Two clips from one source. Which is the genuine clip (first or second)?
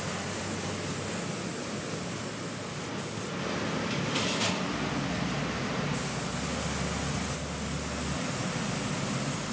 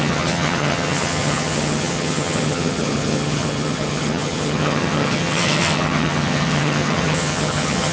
first